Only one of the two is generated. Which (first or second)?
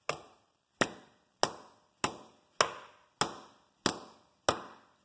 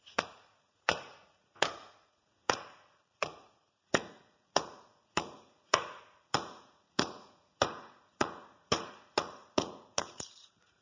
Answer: second